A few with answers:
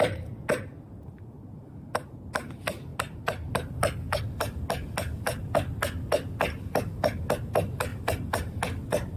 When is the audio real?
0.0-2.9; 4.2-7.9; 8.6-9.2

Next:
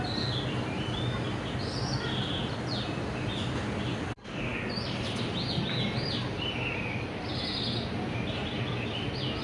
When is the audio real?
0.0-9.4

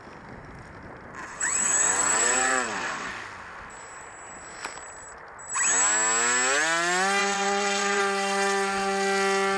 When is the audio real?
0.0-1.3; 3.1-7.2; 8.0-9.6

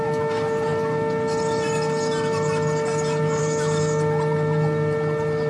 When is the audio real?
0.0-5.5

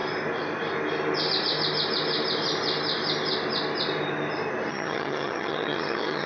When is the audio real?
0.0-4.7

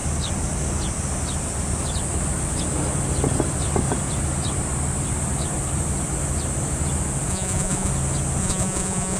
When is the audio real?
0.0-7.3; 7.9-8.4

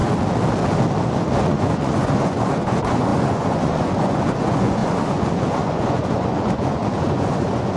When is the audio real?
0.0-1.0

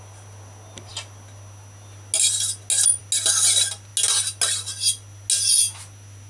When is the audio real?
0.0-6.3